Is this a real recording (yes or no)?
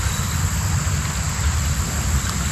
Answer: yes